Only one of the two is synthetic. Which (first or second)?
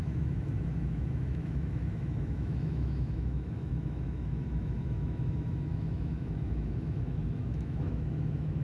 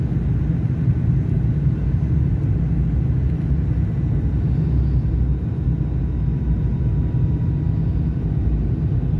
first